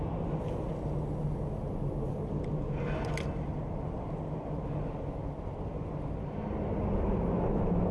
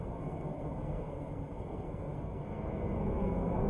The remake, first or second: second